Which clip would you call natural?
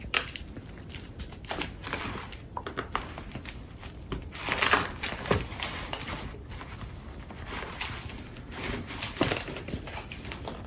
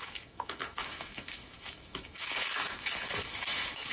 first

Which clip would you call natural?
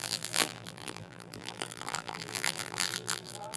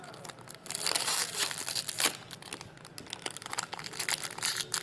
second